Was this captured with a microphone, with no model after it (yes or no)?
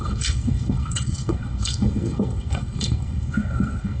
no